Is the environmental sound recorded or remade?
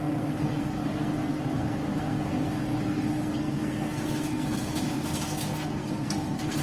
remade